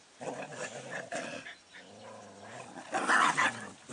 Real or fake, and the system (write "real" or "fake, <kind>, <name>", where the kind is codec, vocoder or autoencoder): real